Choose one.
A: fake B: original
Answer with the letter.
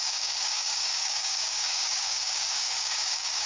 A